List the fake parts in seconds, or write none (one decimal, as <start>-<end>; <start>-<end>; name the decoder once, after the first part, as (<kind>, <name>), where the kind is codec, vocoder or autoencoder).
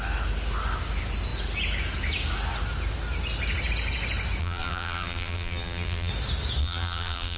4.4-6.1 (vocoder, BigVGAN v2); 6.6-7.4